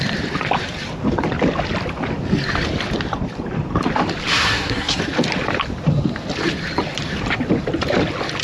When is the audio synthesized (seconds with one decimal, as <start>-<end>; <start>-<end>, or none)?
4.3-5.0